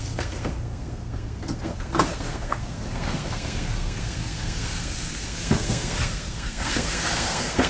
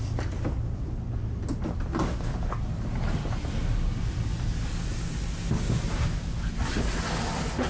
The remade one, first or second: first